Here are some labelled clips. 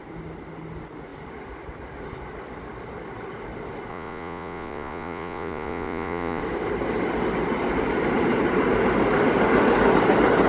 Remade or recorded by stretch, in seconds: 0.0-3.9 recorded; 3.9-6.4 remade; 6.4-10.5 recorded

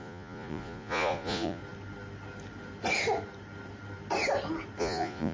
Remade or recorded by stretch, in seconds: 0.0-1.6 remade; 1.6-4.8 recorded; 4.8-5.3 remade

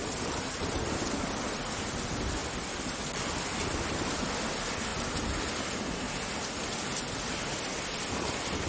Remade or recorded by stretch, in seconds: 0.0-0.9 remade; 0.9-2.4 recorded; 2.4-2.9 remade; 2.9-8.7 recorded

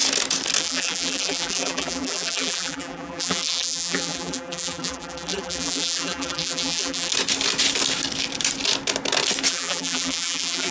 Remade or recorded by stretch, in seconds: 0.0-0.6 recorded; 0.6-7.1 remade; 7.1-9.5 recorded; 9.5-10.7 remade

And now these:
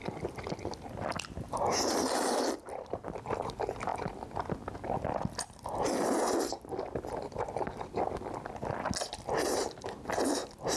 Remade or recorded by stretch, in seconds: 0.0-10.8 recorded

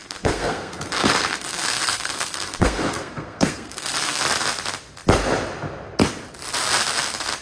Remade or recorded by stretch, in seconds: 0.0-4.2 remade; 4.2-7.4 recorded

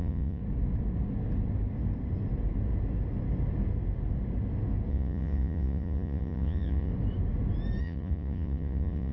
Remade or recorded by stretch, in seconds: 0.0-0.4 remade; 0.4-4.9 recorded; 4.9-6.9 remade; 6.9-7.8 recorded; 7.8-9.1 remade